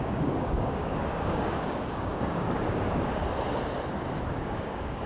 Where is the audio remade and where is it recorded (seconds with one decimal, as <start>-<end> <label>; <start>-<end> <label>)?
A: 0.0-3.2 remade; 3.2-4.3 recorded; 4.3-5.1 remade